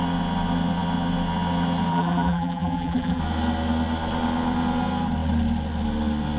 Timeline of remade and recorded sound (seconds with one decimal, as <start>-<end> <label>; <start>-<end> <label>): 0.0-1.9 recorded; 1.9-3.2 remade; 3.2-6.4 recorded